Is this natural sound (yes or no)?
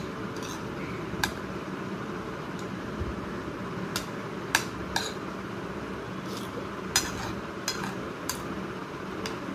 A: yes